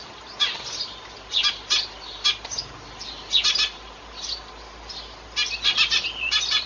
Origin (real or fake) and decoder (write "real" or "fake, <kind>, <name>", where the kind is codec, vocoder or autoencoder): real